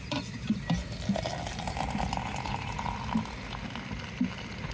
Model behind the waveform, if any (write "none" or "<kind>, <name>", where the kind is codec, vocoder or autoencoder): none